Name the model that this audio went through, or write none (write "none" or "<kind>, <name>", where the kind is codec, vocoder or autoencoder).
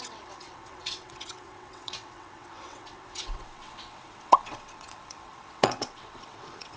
vocoder, WaveNeXt